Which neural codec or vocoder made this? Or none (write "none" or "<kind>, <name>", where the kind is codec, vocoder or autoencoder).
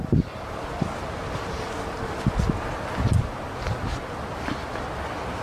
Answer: none